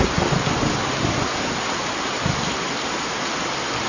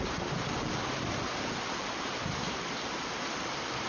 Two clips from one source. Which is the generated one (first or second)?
second